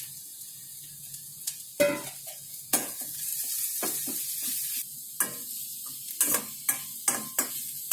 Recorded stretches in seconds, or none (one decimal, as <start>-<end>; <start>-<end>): 1.7-2.2; 3.3-7.5

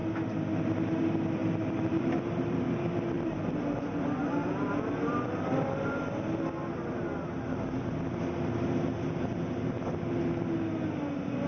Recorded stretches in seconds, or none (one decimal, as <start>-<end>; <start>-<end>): 0.0-1.4; 3.4-11.5

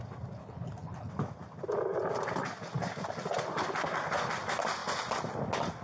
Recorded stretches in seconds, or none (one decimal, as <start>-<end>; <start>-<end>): 0.0-0.4; 1.1-5.8

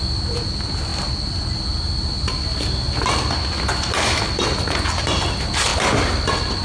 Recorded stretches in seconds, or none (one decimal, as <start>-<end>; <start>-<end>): 0.0-6.6

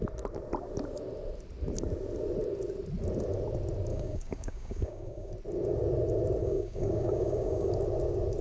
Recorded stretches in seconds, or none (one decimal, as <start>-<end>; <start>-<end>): 0.0-3.9; 5.3-6.4; 7.7-8.4